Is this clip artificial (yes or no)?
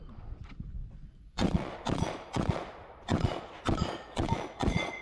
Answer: yes